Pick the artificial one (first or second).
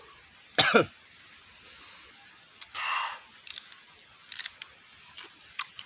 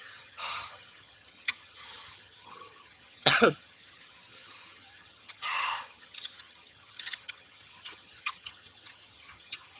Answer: second